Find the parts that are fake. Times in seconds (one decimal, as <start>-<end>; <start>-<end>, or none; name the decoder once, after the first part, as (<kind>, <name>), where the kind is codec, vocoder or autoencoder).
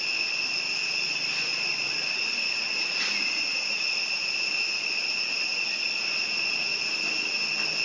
1.5-3.0 (vocoder, Vocos); 3.5-4.0; 6.2-6.9